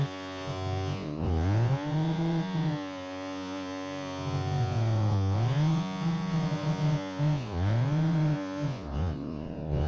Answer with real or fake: fake